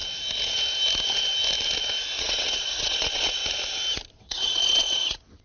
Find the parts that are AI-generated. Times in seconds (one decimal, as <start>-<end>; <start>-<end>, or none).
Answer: 2.2-3.4; 4.1-5.4